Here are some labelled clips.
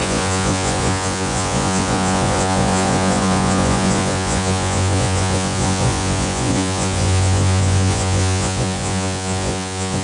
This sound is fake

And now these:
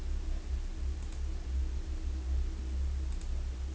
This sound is real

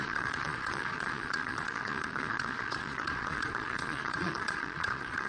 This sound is fake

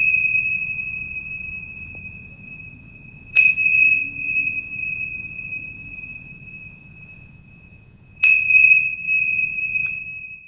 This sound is fake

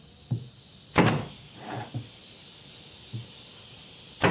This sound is real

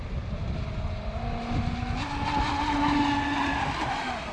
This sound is real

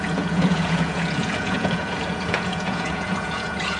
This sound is fake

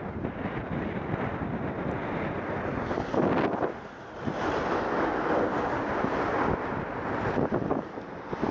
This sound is real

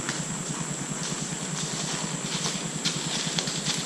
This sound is real